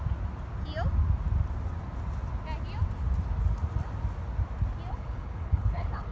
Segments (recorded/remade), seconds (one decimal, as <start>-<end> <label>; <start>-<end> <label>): 0.0-4.9 recorded; 4.9-6.1 remade